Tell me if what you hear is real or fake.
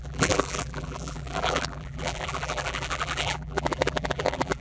fake